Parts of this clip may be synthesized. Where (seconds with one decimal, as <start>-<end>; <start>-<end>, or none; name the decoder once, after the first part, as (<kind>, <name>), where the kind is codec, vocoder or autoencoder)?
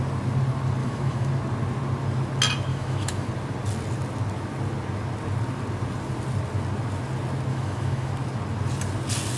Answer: 0.8-1.3 (autoencoder, DAC-VAE); 2.7-3.3; 7.5-8.1